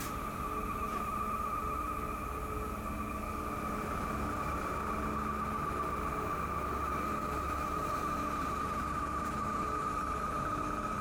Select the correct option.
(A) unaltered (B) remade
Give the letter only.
A